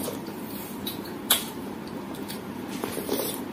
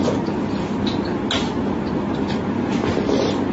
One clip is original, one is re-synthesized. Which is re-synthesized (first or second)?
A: first